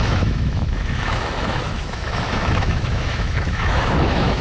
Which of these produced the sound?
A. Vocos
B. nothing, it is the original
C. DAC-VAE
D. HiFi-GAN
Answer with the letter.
C